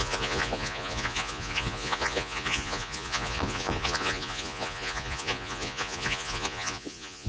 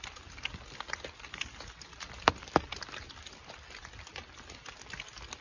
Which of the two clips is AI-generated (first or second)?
first